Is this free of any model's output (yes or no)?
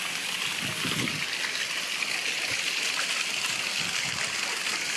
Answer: yes